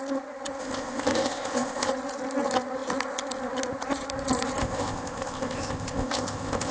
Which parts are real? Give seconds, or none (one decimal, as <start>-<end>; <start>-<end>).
0.0-0.6; 1.9-4.6